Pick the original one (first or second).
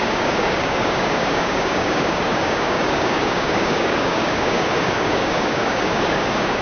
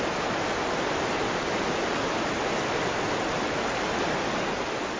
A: second